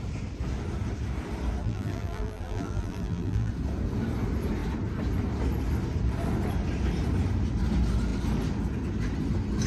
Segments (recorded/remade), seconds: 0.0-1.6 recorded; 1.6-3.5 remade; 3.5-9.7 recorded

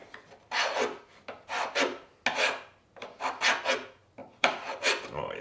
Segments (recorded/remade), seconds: 0.0-4.2 recorded; 4.2-5.4 remade

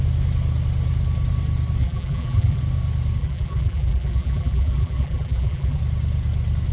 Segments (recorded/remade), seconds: 0.0-1.8 recorded; 1.8-2.6 remade; 2.6-3.2 recorded; 3.2-5.8 remade; 5.8-6.7 recorded

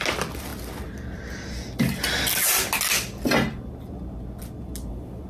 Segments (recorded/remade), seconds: 0.0-5.3 recorded

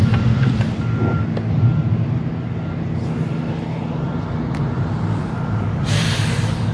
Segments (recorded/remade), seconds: 0.0-1.7 remade; 1.7-4.2 recorded; 4.2-6.7 remade

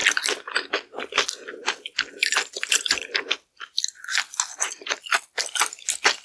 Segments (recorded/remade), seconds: 0.0-2.2 recorded; 2.2-3.1 remade; 3.1-4.5 recorded; 4.5-5.0 remade; 5.0-6.2 recorded

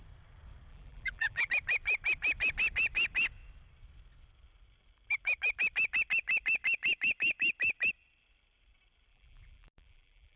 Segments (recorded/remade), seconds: 0.0-0.7 recorded; 0.7-1.5 remade; 1.5-9.1 recorded; 9.1-10.4 remade

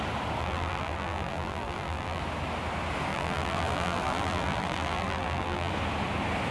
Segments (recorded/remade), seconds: 0.0-0.4 recorded; 0.4-2.2 remade; 2.2-3.1 recorded; 3.1-5.7 remade; 5.7-6.5 recorded